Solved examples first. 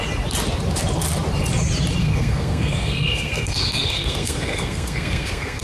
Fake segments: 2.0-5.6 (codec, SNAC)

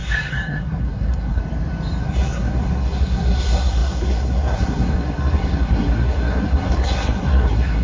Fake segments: 0.0-1.4 (codec, SNAC); 2.0-7.8

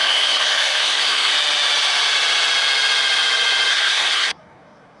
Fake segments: 0.0-1.3 (codec, SNAC); 3.7-5.0